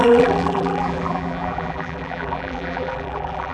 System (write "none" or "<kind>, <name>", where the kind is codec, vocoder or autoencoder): vocoder, BigVGAN v2